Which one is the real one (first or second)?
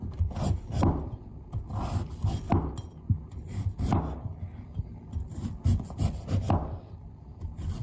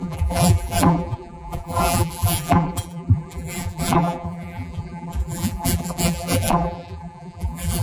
first